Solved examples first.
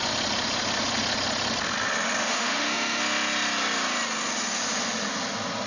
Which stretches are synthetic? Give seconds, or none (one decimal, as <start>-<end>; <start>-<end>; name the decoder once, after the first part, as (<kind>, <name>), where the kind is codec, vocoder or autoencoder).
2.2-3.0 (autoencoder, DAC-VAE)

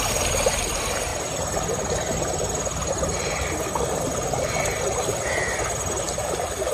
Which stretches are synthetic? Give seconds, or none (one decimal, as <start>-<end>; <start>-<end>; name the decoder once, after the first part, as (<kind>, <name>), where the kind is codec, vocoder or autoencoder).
none

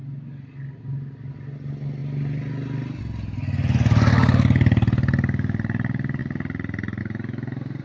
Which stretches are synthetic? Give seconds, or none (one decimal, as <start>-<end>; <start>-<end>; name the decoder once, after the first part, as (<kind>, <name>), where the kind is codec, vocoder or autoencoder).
none

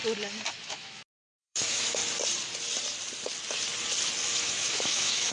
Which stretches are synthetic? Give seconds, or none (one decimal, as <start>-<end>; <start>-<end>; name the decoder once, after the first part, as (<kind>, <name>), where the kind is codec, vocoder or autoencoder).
0.6-2.0 (autoencoder, DAC-VAE); 4.4-5.3

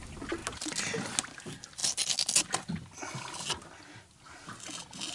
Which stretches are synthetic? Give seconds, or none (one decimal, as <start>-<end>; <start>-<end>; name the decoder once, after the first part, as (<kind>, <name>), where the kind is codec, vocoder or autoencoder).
none

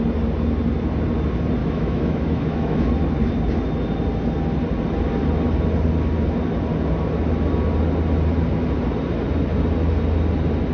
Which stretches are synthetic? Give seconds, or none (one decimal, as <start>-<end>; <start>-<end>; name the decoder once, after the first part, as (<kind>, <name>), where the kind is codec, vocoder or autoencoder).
1.6-2.9 (autoencoder, DAC-VAE)